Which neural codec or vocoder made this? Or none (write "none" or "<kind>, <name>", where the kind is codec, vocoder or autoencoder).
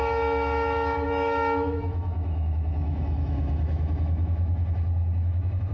autoencoder, DAC-VAE